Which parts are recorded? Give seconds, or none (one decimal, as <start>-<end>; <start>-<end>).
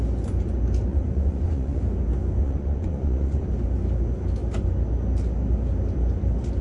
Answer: 0.0-0.9; 1.8-2.4; 3.5-6.6